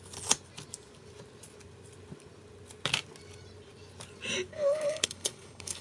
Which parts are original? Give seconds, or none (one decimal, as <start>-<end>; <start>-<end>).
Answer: 0.0-4.5